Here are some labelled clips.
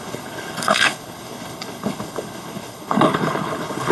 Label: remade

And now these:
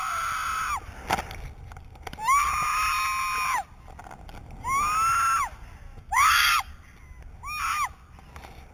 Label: recorded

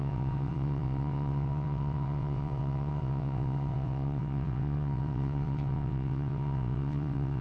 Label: remade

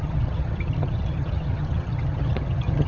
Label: remade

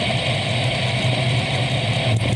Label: recorded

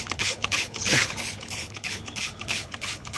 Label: remade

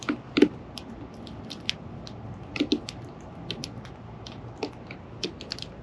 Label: recorded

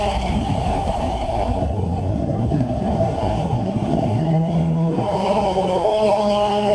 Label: remade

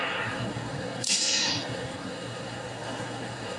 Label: remade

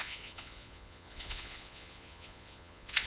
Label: remade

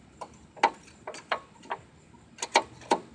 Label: recorded